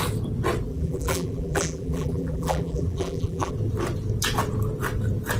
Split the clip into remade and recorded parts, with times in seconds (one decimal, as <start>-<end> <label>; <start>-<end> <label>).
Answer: 0.0-0.7 recorded; 0.7-3.5 remade; 3.5-5.4 recorded